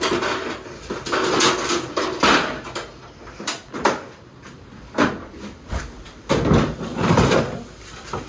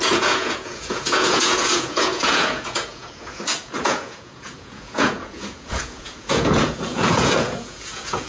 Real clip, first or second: first